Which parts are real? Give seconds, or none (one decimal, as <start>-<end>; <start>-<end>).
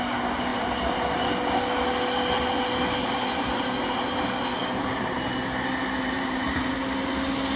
0.0-4.6; 6.7-7.6